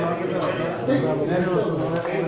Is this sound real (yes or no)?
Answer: yes